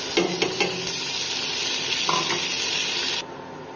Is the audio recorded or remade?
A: recorded